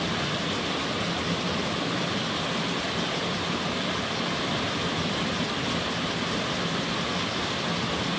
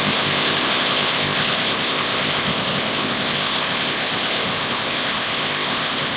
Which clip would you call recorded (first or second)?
first